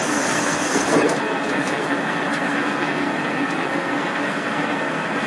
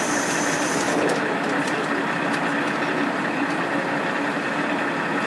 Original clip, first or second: second